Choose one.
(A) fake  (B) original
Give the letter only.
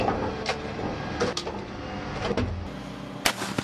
B